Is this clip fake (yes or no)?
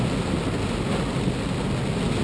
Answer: no